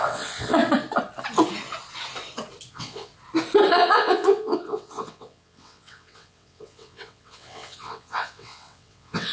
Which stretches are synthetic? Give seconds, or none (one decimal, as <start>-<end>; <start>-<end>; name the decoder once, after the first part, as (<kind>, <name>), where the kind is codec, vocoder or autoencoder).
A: 0.0-0.6 (vocoder, WaveNeXt); 2.7-3.1; 3.7-9.3